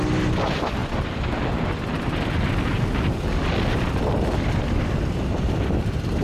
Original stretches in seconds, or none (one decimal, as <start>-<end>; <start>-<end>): 0.0-6.2